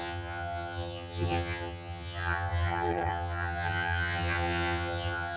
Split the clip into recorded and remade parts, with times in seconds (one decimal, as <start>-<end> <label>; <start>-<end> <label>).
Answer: 0.0-5.4 remade